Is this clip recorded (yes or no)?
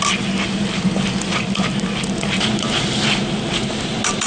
yes